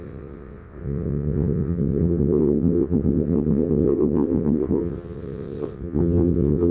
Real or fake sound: fake